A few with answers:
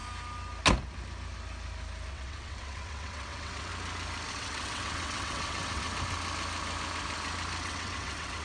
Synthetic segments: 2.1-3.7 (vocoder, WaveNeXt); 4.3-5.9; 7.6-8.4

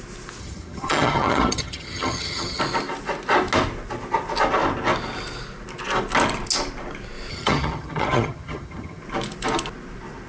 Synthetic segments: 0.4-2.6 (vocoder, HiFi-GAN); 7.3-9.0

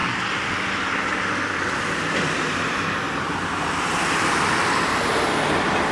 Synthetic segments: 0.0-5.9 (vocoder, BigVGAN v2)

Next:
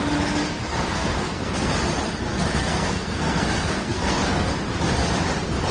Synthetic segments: 0.6-1.7 (codec, SNAC); 2.3-4.5

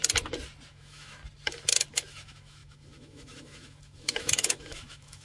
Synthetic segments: 0.7-1.2 (autoencoder, DAC-VAE); 1.9-5.2